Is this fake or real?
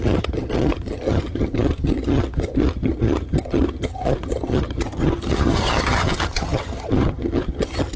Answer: fake